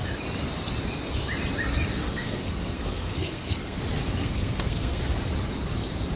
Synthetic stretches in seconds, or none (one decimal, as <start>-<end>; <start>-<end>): 2.0-3.8; 4.2-5.0